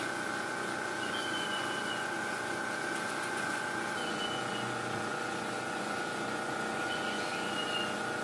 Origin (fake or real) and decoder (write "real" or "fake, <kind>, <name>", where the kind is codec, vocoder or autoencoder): fake, vocoder, Vocos